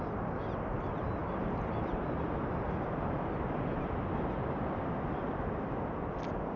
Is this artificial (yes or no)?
no